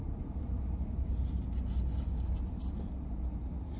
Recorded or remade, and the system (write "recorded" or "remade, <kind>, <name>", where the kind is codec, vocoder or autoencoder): recorded